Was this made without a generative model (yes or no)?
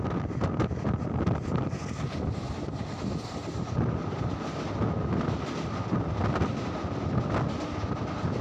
yes